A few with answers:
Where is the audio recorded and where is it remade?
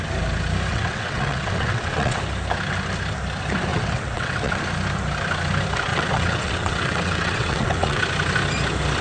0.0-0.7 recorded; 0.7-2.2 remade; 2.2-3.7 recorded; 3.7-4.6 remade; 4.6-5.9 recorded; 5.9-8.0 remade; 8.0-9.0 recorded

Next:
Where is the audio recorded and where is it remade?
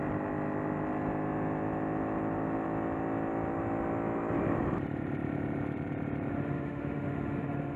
0.0-6.3 recorded; 6.3-7.8 remade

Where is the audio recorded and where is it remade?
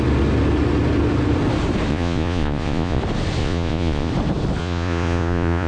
0.0-1.9 recorded; 1.9-3.0 remade; 3.0-3.4 recorded; 3.4-4.1 remade; 4.1-4.6 recorded; 4.6-5.7 remade